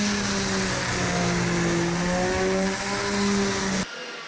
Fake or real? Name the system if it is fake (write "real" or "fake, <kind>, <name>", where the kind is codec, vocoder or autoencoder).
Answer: real